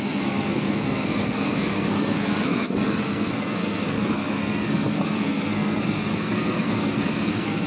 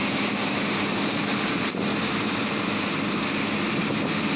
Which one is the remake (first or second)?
first